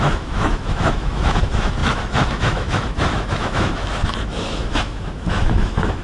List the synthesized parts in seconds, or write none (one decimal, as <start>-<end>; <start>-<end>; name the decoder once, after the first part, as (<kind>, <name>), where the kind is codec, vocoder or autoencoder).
0.0-6.0 (autoencoder, DAC-VAE)